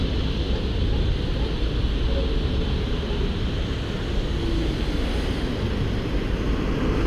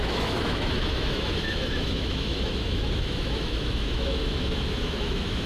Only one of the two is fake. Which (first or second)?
second